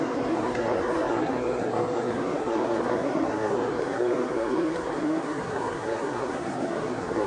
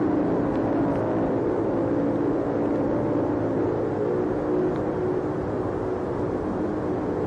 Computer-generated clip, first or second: first